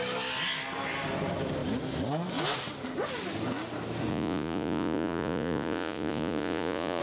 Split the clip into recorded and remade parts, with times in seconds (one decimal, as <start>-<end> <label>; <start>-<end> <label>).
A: 0.0-4.1 recorded; 4.1-7.0 remade